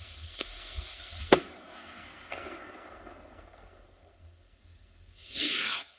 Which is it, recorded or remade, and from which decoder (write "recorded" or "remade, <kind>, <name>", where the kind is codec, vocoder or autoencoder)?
remade, codec, SNAC